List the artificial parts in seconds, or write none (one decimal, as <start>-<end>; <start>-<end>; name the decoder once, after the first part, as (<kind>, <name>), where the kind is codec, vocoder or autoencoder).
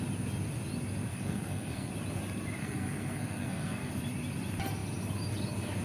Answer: 1.1-1.9 (codec, SNAC); 2.6-3.9